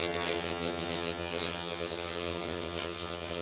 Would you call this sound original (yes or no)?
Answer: no